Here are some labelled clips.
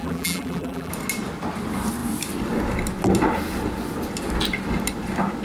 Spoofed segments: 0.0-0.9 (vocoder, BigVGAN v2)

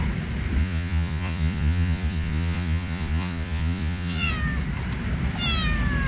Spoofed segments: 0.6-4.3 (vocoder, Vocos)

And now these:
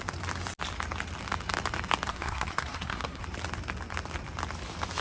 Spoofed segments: 2.1-3.2 (codec, SNAC)